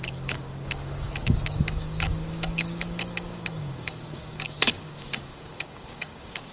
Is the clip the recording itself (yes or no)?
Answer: no